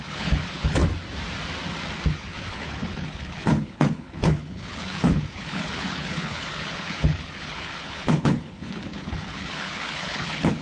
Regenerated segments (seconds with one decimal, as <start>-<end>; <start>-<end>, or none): 0.0-0.8; 2.1-10.6